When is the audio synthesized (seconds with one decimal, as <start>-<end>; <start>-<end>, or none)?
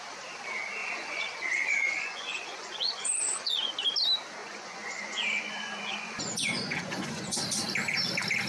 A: 0.8-3.7; 4.4-7.4